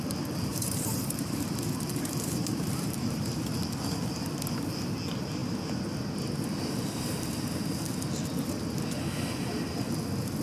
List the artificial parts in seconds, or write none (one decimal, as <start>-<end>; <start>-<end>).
0.5-3.8